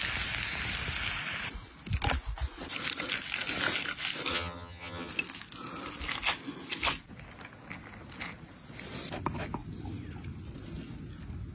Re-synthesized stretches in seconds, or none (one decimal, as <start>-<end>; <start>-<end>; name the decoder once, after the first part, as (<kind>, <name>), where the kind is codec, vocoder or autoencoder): 4.3-5.1 (vocoder, HiFi-GAN)